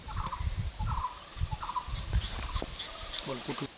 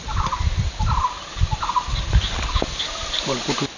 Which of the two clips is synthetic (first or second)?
first